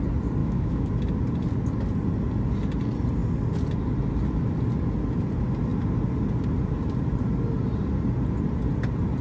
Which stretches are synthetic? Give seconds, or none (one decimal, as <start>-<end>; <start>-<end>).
0.4-0.9

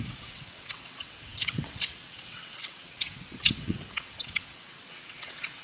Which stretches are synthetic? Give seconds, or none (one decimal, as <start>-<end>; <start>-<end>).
0.0-5.6

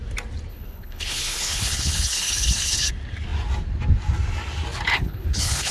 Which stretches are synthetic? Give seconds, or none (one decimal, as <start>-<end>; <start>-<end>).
0.5-2.9; 4.9-5.7

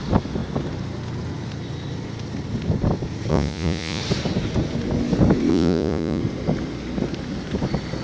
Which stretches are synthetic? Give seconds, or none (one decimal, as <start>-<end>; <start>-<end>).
3.3-4.0; 5.5-6.2

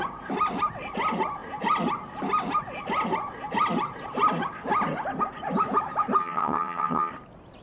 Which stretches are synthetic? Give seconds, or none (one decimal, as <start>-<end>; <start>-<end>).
6.2-7.1

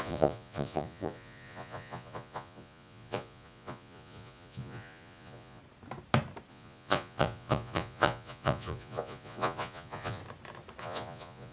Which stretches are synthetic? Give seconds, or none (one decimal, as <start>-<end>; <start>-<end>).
0.0-5.6; 6.5-10.2; 10.8-11.5

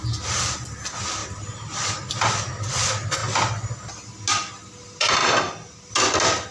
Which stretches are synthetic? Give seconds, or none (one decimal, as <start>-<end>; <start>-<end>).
1.2-2.1; 5.2-5.9